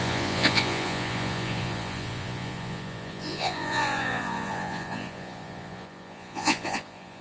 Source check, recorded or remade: remade